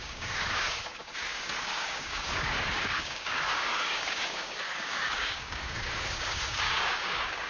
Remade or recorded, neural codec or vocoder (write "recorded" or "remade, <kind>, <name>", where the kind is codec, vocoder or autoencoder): remade, codec, DAC